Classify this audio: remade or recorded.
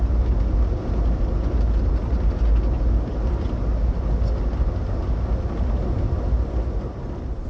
recorded